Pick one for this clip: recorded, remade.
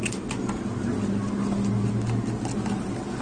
recorded